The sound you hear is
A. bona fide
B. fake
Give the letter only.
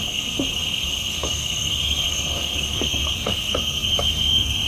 B